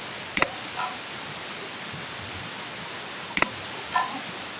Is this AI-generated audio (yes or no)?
no